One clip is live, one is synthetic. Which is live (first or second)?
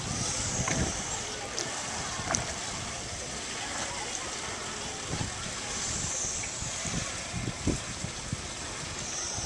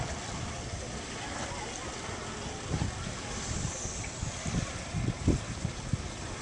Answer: first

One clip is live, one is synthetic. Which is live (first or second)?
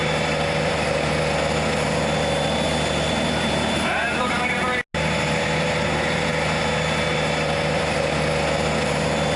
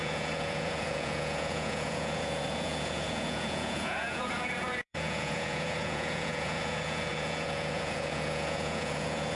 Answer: first